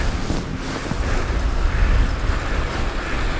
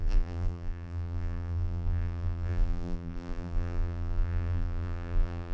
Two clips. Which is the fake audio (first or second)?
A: second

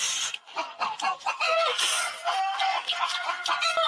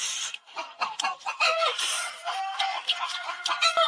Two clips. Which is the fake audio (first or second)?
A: second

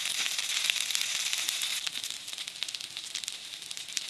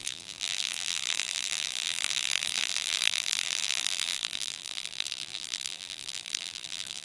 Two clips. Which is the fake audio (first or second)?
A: second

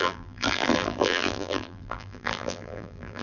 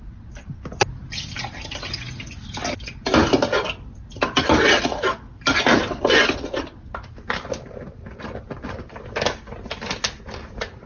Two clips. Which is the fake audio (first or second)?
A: first